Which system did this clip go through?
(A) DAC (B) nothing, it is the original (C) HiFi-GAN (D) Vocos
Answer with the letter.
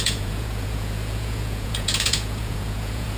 D